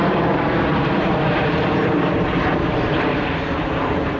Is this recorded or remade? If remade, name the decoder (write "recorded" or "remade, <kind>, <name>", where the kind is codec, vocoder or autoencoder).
remade, vocoder, BigVGAN v2